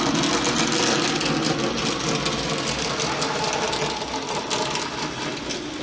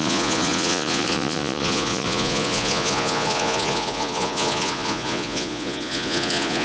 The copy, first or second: second